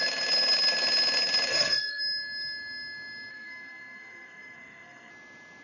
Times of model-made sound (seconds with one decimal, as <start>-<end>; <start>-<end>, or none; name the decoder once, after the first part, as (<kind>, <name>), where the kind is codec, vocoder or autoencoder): 1.5-2.0 (codec, SNAC); 3.3-5.1